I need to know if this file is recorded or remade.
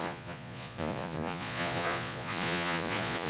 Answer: remade